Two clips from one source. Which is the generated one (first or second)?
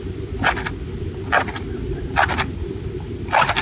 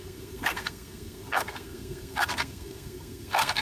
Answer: second